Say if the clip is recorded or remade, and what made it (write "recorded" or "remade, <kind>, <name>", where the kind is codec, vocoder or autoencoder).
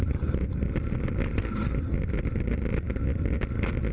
recorded